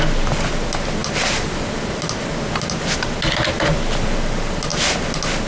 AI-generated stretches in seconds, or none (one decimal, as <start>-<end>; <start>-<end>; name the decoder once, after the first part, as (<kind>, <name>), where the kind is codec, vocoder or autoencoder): none

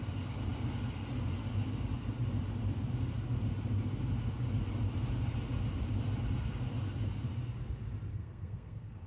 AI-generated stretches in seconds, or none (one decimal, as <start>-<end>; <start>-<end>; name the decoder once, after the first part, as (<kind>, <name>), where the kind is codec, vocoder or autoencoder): 8.1-9.1 (codec, SNAC)

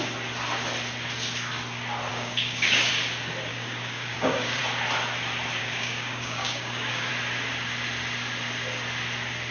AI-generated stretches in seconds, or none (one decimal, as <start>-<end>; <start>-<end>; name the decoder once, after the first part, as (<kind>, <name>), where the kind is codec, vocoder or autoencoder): 2.1-2.9 (codec, DAC); 3.5-4.6; 5.6-7.1

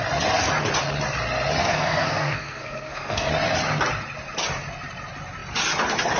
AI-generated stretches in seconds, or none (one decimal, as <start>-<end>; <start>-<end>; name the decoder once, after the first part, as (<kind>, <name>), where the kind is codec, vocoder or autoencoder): 1.6-3.3 (codec, SNAC)

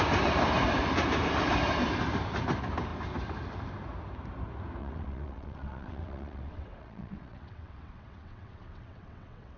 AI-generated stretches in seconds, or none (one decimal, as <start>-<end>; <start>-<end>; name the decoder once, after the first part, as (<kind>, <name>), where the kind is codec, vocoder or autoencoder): 4.8-9.6 (vocoder, WaveNeXt)

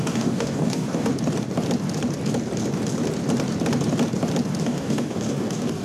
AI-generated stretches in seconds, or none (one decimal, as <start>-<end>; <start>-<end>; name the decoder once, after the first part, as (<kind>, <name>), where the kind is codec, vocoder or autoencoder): 0.0-1.1 (codec, DAC); 4.6-5.8

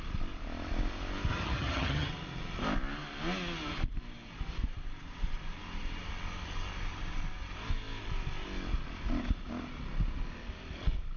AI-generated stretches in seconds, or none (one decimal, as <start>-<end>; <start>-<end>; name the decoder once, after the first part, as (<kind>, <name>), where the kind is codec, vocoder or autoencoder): 1.3-2.1 (vocoder, HiFi-GAN)

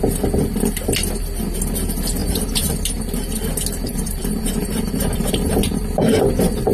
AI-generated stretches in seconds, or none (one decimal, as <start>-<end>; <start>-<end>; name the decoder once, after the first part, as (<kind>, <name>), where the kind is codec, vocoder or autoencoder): 2.2-2.7 (vocoder, BigVGAN v2); 3.9-5.9